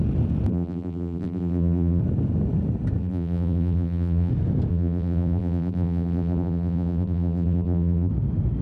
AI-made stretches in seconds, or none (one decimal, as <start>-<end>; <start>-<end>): 0.5-2.0; 3.0-4.3; 4.7-8.1